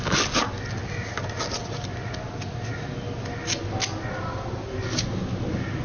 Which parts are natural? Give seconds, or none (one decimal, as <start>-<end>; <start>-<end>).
0.0-5.8